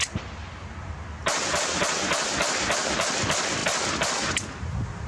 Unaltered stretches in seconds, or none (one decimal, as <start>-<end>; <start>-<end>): 0.0-5.1

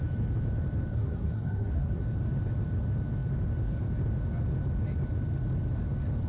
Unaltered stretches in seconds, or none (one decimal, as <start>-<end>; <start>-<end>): 0.0-0.9; 2.0-6.3

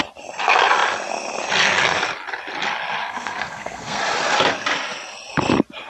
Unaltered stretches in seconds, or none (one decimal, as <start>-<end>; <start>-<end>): 0.0-3.0; 4.0-5.9

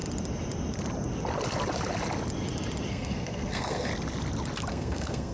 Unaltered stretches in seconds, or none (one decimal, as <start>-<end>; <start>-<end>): 0.0-2.9; 3.9-4.7

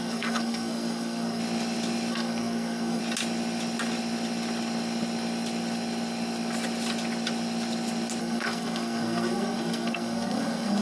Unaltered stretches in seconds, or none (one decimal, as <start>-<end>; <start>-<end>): 1.4-2.1; 3.0-8.2

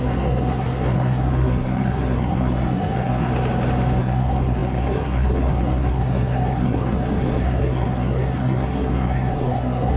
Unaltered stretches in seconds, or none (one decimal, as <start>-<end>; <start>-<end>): 3.3-4.0

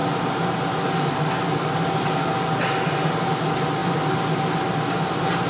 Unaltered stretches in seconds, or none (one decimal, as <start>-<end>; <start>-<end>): 0.0-5.5

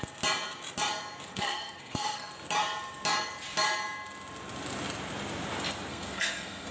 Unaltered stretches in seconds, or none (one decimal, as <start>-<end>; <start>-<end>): 0.0-1.3; 2.3-5.9